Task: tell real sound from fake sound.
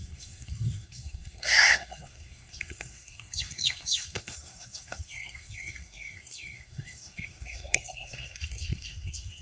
fake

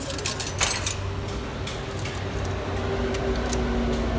real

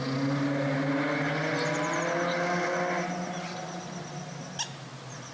real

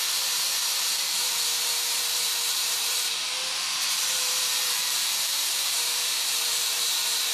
fake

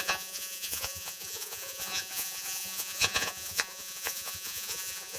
fake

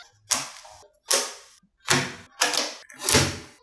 real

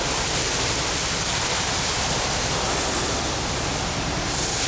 fake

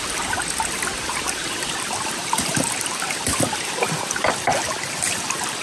real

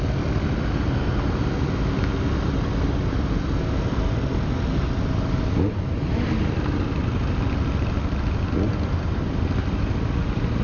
real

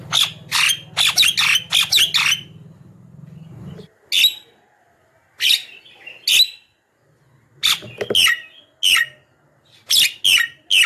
real